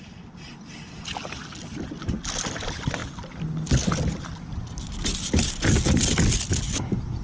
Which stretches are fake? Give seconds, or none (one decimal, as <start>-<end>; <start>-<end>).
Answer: none